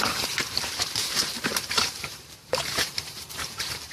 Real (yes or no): no